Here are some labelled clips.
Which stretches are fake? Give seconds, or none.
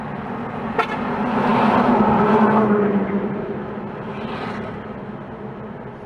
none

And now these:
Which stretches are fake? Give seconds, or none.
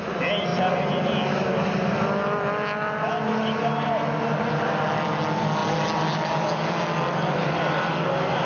none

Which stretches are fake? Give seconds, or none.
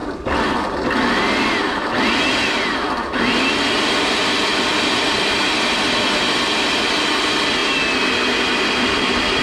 none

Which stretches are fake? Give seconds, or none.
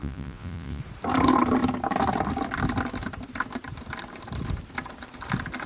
0.0-0.8 (vocoder, Vocos)